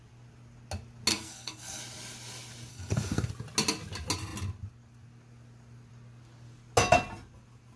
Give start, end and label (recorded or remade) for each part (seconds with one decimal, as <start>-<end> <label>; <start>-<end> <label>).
0.0-1.1 recorded; 1.1-1.8 remade; 1.8-2.7 recorded; 2.7-3.3 remade; 3.3-7.8 recorded